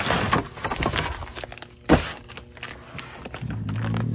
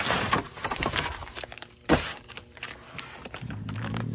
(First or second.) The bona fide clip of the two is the first